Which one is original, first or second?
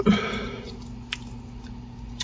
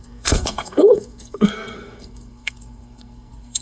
first